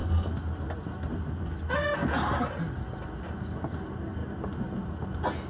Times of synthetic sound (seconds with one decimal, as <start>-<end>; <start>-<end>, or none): none